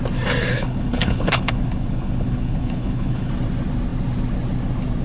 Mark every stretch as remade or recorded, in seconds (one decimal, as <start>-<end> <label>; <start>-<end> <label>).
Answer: 0.0-0.5 recorded; 0.5-3.3 remade; 3.3-5.0 recorded